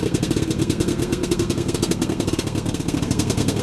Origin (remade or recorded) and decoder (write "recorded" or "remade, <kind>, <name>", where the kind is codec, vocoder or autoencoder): remade, codec, SNAC